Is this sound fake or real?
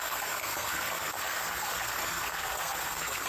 fake